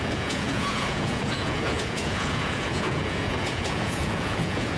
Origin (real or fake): fake